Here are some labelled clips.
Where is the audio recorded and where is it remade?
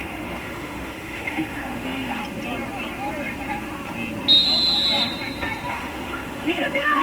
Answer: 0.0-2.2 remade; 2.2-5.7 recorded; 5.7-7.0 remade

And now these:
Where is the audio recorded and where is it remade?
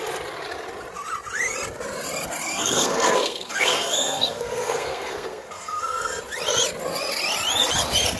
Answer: 0.0-2.5 recorded; 2.5-6.2 remade; 6.2-8.2 recorded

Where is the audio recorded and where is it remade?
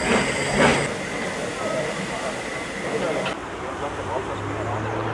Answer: 0.0-5.1 recorded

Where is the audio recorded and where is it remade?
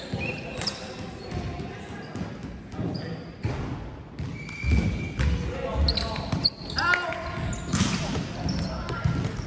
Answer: 0.0-9.5 recorded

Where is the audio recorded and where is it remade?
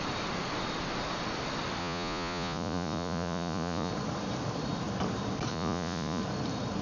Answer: 0.0-1.8 recorded; 1.8-3.9 remade; 3.9-5.5 recorded; 5.5-6.2 remade; 6.2-6.8 recorded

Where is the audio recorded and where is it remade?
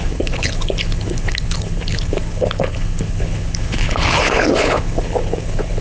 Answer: 0.0-5.8 remade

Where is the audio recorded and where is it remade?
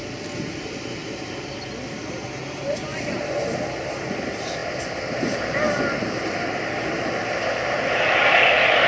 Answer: 0.0-2.9 remade; 2.9-3.9 recorded; 3.9-4.6 remade; 4.6-5.5 recorded; 5.5-8.9 remade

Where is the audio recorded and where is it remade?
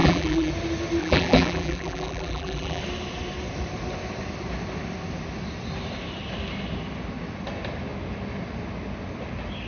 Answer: 0.0-0.5 remade; 0.5-1.0 recorded; 1.0-2.8 remade; 2.8-9.7 recorded